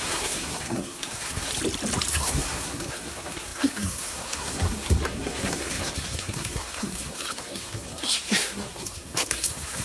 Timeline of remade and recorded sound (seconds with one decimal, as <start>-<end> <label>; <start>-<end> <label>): 0.0-1.5 remade; 1.5-2.1 recorded; 2.1-9.8 remade